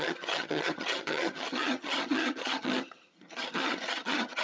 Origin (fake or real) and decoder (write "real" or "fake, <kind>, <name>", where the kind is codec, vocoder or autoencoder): fake, vocoder, HiFi-GAN